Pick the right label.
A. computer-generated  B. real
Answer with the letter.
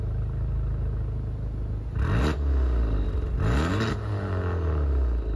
B